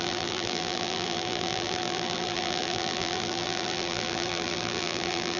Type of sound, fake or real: fake